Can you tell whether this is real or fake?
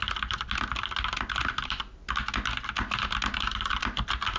real